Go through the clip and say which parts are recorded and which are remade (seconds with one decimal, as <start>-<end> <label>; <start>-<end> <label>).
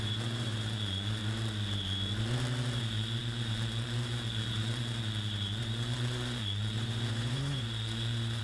0.0-1.2 remade; 1.2-2.8 recorded; 2.8-8.4 remade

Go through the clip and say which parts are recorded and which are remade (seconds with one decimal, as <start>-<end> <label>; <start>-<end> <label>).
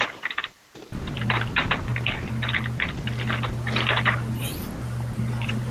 0.0-1.9 remade; 1.9-5.3 recorded; 5.3-5.7 remade